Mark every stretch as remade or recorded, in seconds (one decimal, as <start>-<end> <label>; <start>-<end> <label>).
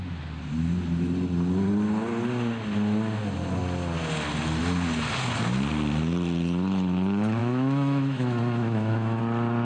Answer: 0.0-7.4 recorded; 7.4-9.2 remade; 9.2-9.6 recorded